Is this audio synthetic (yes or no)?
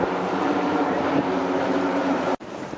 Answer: yes